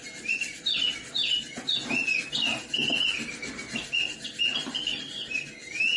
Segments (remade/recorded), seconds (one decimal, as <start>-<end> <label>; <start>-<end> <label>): 0.0-6.0 recorded